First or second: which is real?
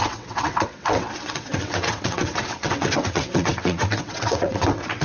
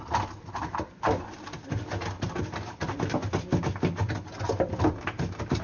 second